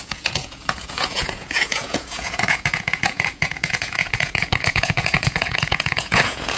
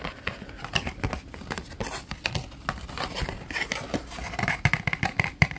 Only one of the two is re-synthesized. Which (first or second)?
first